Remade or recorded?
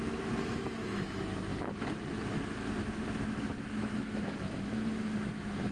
remade